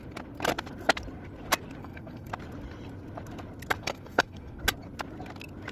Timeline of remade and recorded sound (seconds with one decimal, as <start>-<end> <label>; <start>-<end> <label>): 0.0-1.8 recorded; 1.8-2.3 remade; 2.3-3.8 recorded; 3.8-4.6 remade; 4.6-5.7 recorded